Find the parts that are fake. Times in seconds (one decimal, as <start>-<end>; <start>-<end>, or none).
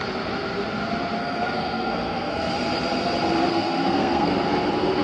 1.2-2.5; 3.5-4.3